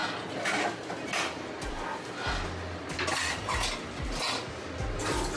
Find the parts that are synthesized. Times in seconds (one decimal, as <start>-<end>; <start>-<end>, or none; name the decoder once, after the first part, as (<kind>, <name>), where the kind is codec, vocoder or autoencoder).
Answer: none